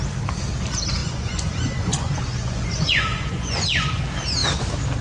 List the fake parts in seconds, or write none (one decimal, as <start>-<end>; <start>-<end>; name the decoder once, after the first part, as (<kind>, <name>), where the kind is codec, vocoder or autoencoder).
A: 1.0-4.0 (vocoder, Vocos)